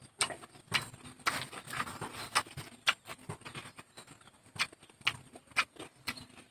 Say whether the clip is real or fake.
real